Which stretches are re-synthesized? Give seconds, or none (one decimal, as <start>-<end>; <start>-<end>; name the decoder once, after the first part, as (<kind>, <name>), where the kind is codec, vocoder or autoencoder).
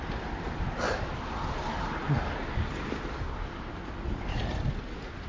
none